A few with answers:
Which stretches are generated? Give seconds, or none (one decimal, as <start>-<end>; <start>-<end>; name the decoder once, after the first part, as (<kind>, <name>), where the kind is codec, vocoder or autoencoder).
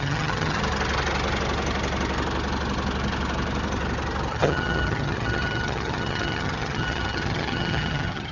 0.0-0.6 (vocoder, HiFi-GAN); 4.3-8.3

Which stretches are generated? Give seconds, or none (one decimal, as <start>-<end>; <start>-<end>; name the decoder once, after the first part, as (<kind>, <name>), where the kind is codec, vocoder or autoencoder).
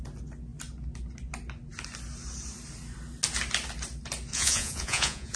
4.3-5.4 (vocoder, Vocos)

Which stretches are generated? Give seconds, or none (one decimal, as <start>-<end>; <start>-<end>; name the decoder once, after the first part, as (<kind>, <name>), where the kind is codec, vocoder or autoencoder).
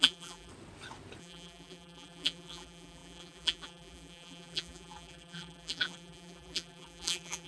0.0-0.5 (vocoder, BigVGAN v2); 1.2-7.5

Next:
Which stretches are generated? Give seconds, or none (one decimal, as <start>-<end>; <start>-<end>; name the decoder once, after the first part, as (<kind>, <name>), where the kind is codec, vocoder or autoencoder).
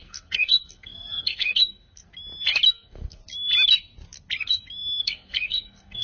0.0-2.1 (codec, SNAC); 2.7-3.2; 5.0-6.0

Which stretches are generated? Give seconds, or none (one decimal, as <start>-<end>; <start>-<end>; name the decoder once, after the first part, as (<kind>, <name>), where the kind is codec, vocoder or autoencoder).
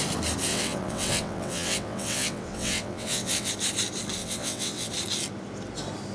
0.5-3.5 (vocoder, WaveNeXt); 4.2-4.9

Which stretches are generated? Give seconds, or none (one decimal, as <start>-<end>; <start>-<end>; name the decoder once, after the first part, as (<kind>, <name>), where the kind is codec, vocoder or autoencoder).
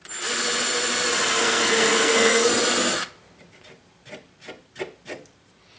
1.4-2.5 (codec, SNAC)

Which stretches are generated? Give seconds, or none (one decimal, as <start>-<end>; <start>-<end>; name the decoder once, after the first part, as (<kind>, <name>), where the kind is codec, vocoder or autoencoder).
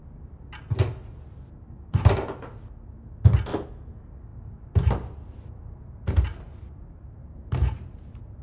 none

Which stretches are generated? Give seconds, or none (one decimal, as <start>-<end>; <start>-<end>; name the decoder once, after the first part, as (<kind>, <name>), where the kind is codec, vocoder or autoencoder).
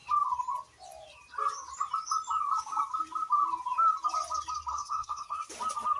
4.7-5.5 (codec, SNAC)